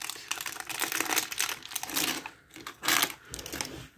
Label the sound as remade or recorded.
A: recorded